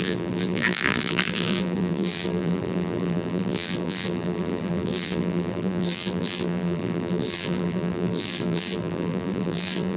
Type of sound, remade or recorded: remade